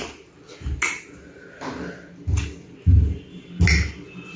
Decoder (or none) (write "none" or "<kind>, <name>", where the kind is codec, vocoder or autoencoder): none